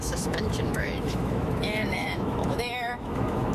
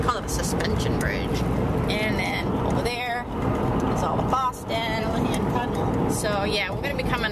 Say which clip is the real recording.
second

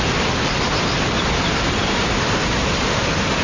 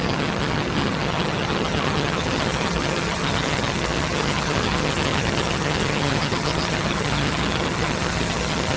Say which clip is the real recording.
first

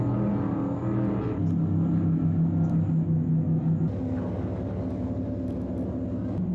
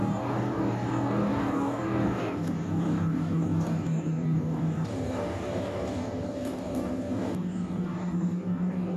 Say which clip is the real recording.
first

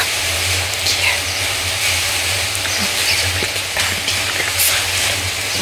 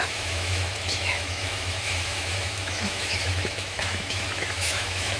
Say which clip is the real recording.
first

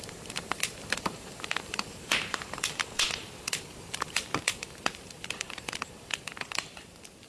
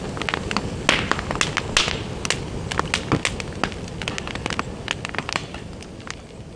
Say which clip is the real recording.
second